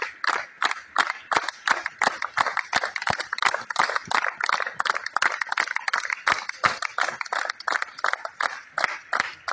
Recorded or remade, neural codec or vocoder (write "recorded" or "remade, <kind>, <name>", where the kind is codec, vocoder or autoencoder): recorded